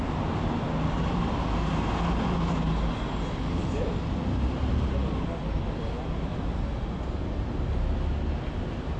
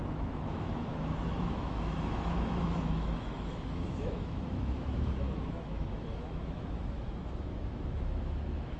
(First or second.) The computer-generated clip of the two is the second